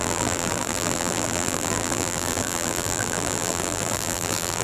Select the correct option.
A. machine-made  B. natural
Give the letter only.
A